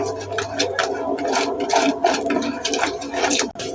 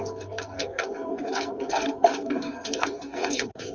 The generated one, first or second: second